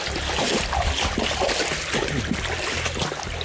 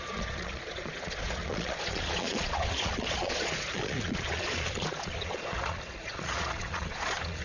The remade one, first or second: second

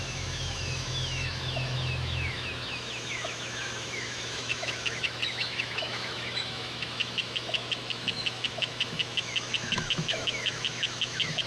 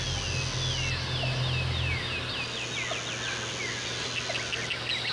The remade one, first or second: first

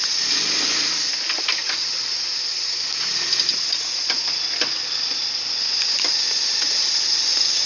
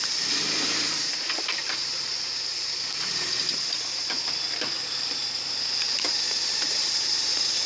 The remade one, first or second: second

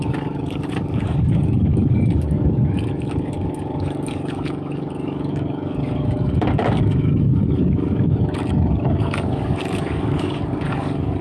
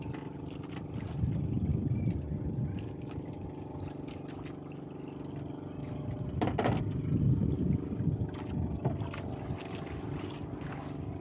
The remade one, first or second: first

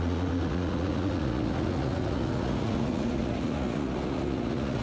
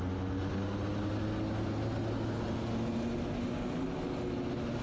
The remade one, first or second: first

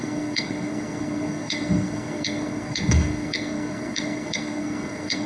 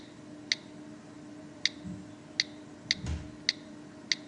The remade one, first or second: first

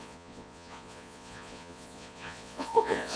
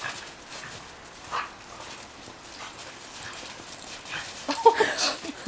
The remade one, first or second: first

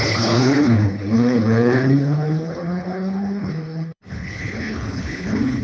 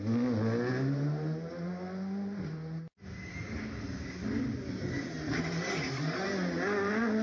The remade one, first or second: first